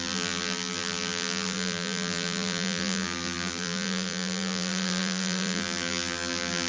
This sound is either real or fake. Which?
fake